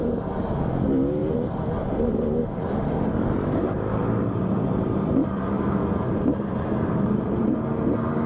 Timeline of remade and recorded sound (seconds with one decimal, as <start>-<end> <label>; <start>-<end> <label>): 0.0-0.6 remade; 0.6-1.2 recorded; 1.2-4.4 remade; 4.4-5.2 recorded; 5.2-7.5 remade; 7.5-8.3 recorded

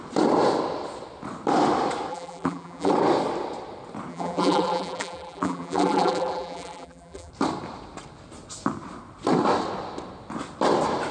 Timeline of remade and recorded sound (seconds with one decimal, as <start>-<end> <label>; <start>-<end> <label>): 0.0-2.1 recorded; 2.1-2.9 remade; 2.9-4.1 recorded; 4.1-7.3 remade; 7.3-11.1 recorded

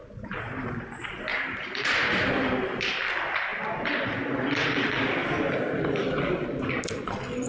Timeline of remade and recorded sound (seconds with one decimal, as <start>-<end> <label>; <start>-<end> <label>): 0.0-1.3 recorded; 1.3-2.3 remade; 2.3-7.5 recorded